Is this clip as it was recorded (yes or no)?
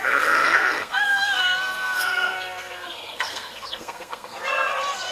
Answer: no